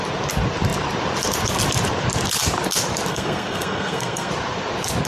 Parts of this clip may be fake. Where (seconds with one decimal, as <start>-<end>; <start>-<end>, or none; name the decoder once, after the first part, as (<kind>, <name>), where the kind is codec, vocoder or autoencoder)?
3.1-4.3 (codec, SNAC)